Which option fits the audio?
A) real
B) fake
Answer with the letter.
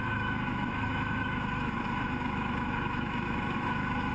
B